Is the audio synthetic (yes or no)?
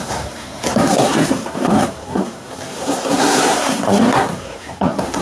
yes